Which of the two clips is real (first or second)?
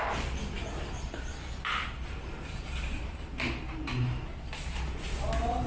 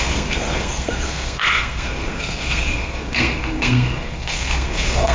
first